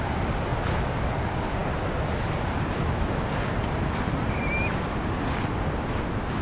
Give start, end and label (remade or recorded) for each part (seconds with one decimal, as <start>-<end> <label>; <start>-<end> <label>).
0.0-6.4 recorded